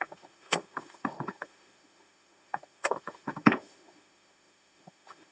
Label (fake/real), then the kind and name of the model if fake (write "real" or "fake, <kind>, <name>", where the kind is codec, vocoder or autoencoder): fake, autoencoder, DAC-VAE